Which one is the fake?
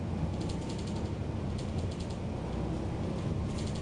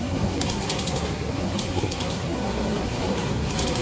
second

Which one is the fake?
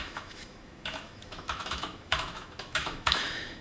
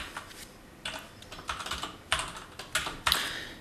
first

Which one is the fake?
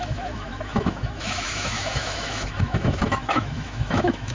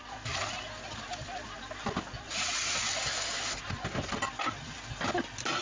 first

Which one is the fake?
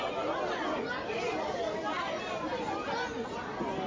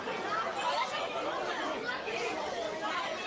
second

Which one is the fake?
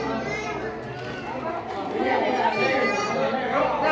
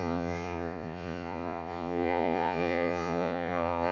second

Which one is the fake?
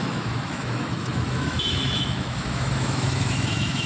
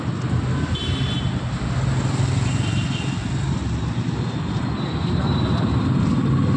first